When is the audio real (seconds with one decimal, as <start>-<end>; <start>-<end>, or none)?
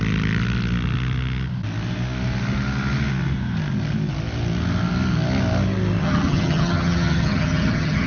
0.0-6.0